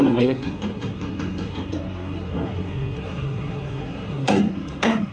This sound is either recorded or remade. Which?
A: remade